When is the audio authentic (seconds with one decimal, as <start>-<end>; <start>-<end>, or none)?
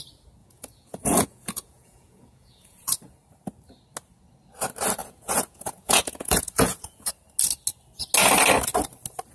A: 0.0-0.4; 3.0-5.0; 7.1-9.3